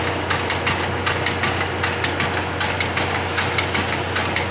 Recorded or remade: recorded